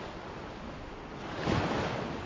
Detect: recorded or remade recorded